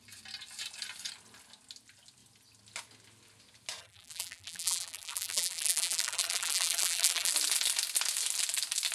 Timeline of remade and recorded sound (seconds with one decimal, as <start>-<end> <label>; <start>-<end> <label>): 0.0-3.8 recorded; 3.8-7.3 remade; 7.3-8.9 recorded